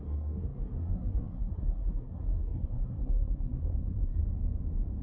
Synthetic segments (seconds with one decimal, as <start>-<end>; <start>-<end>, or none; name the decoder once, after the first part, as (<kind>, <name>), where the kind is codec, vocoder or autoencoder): 0.0-4.2 (codec, SNAC)